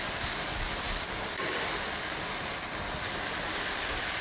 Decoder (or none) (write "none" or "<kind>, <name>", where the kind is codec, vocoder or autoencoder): none